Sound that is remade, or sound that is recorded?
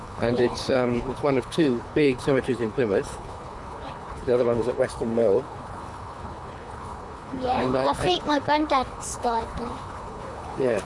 remade